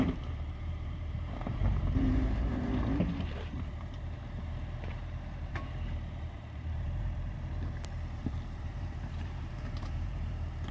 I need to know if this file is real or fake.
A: fake